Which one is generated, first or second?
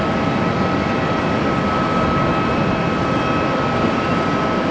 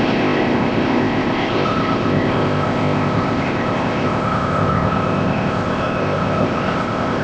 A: second